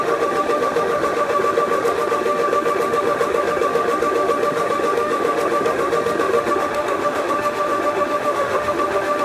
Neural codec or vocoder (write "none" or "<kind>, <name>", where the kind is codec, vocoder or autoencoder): autoencoder, DAC-VAE